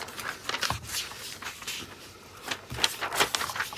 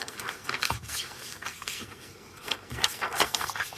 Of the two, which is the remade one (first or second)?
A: second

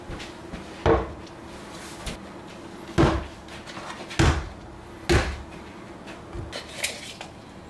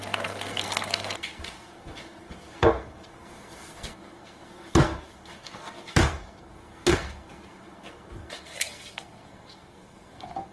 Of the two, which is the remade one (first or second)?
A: second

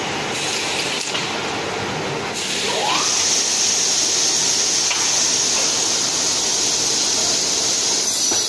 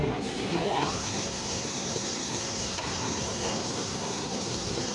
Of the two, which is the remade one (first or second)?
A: second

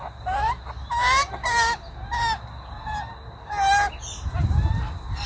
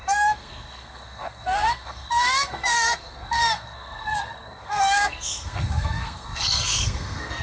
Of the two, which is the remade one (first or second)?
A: second